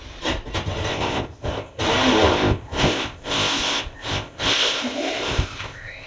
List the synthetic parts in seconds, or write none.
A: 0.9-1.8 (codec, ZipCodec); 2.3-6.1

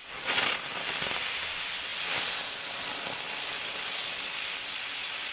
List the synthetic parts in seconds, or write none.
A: none